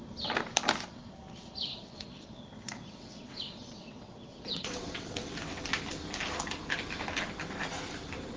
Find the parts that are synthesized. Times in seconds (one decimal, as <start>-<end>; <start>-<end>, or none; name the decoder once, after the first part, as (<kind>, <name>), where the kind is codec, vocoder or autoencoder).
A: 1.7-5.6 (vocoder, WaveNeXt)